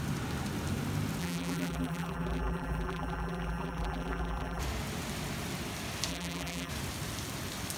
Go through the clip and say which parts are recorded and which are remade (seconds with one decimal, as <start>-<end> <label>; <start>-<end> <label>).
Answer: 0.0-1.2 recorded; 1.2-4.6 remade; 4.6-6.1 recorded; 6.1-6.7 remade; 6.7-7.8 recorded

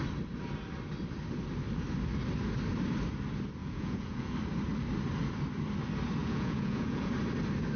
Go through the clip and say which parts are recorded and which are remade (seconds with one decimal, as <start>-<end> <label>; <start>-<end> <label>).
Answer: 0.0-3.6 recorded; 3.6-4.3 remade; 4.3-6.2 recorded; 6.2-7.1 remade; 7.1-7.8 recorded

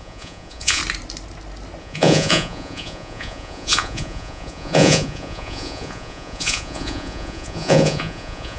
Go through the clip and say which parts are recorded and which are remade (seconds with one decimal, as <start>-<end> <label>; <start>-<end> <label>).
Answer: 0.0-0.8 remade; 0.8-1.8 recorded; 1.8-8.6 remade

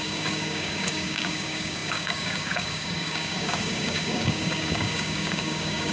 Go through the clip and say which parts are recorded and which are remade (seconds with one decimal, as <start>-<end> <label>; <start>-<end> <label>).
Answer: 0.0-5.9 remade

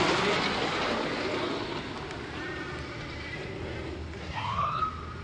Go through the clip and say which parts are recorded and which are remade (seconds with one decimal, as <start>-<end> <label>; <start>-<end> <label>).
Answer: 0.0-4.2 recorded; 4.2-4.8 remade; 4.8-5.2 recorded